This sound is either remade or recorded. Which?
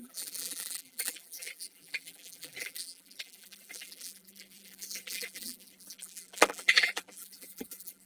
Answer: remade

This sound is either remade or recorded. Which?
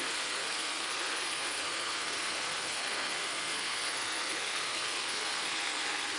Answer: remade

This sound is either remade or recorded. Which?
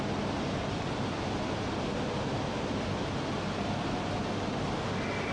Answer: recorded